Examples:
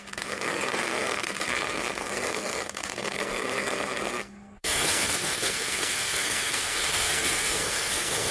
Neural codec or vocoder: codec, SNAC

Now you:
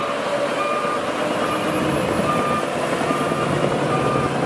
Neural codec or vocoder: none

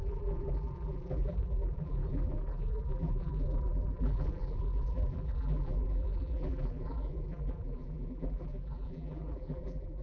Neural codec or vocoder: vocoder, BigVGAN v2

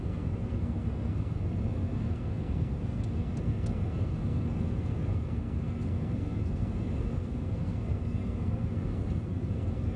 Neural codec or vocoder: codec, SNAC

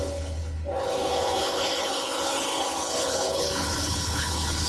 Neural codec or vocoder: codec, HILCodec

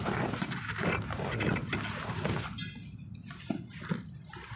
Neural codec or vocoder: none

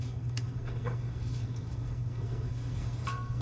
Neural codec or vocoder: codec, SNAC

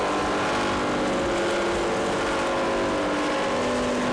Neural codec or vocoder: none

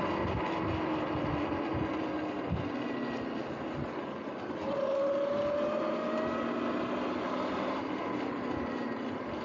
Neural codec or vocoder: none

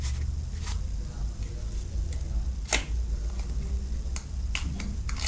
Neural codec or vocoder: none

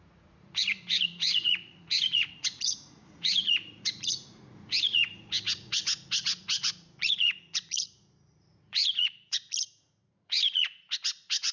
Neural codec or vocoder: vocoder, Vocos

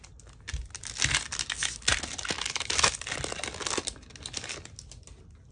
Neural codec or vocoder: none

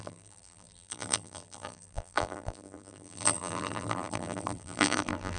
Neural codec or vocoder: vocoder, BigVGAN v2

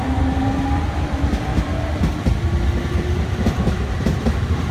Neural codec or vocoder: vocoder, BigVGAN v2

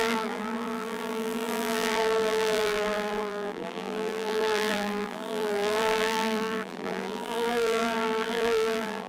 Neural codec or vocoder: vocoder, BigVGAN v2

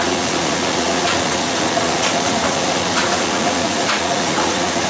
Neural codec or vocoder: vocoder, Vocos